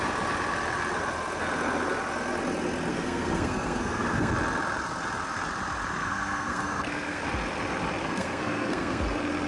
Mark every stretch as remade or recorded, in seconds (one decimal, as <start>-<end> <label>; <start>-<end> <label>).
0.0-2.9 recorded; 2.9-4.3 remade; 4.3-6.0 recorded; 6.0-7.2 remade; 7.2-8.0 recorded; 8.0-9.0 remade; 9.0-9.5 recorded